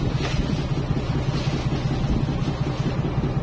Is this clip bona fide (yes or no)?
yes